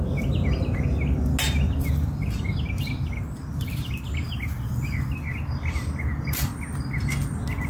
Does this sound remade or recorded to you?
recorded